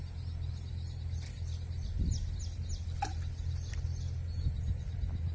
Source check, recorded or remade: recorded